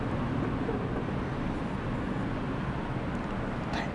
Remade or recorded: recorded